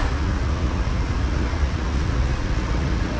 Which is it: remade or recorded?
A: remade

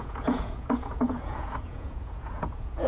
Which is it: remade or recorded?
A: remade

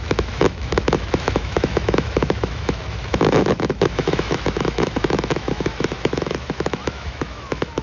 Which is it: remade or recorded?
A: remade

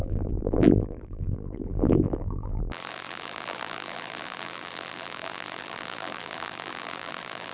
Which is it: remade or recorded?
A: remade